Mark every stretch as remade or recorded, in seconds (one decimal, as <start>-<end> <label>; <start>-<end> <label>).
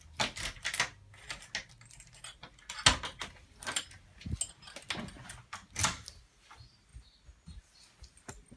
0.0-8.6 recorded